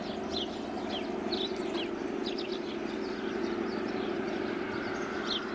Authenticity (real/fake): real